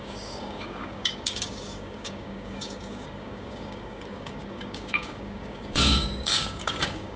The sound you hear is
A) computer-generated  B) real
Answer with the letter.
A